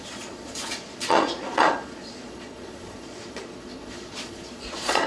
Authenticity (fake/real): fake